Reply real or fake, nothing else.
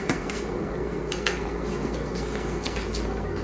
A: fake